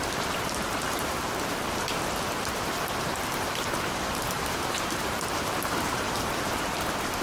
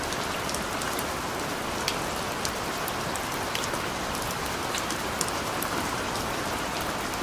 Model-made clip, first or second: first